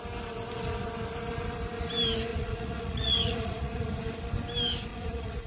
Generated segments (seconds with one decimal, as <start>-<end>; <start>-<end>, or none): 2.3-4.0; 4.9-5.5

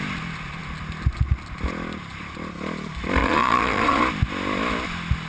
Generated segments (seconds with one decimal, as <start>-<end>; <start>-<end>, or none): 3.2-4.0